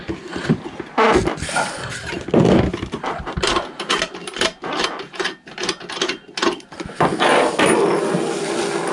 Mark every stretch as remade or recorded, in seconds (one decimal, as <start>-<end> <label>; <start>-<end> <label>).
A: 0.0-8.9 recorded